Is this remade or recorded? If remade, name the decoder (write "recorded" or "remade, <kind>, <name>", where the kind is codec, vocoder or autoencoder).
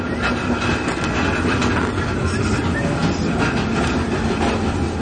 recorded